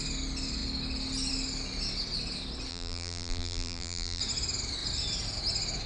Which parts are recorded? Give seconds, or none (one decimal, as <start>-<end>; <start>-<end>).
0.0-2.7; 4.2-5.9